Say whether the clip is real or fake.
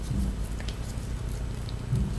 real